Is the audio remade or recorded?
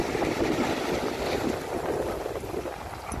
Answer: recorded